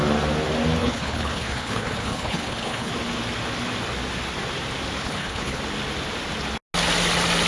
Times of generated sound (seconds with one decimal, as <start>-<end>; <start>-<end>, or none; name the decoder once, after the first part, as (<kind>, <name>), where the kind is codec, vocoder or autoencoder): 0.8-2.9 (codec, HILCodec); 5.0-5.6